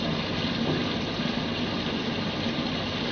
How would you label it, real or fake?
real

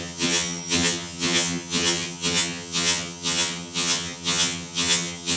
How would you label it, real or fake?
fake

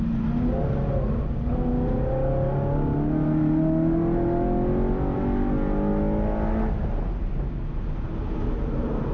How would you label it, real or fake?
real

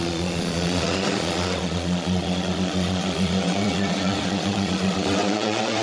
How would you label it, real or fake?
fake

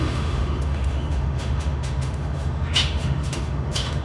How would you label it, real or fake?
fake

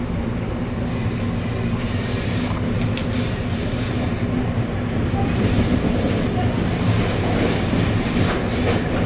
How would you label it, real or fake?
real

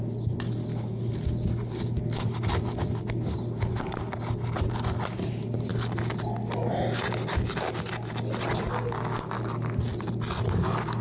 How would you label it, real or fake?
real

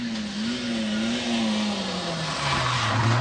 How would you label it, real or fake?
real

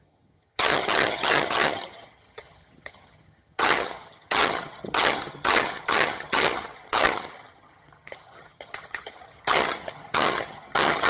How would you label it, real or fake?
fake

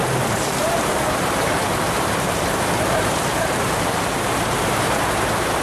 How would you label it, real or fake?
fake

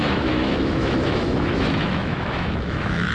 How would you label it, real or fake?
fake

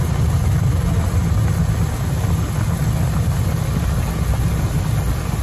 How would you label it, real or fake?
real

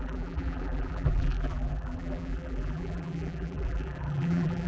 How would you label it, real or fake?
fake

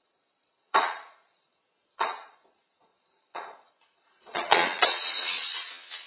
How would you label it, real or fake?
fake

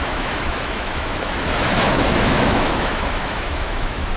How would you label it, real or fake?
fake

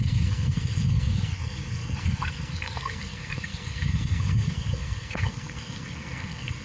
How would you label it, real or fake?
fake